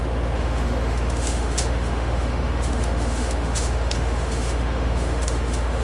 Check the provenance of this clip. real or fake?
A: fake